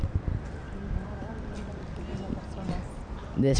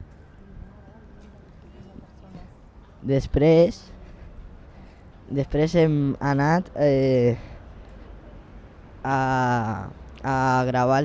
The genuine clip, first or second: second